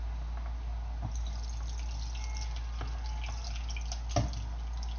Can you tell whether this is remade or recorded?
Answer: recorded